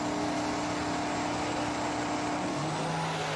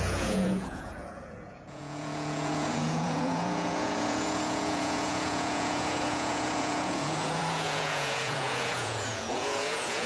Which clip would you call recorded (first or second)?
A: first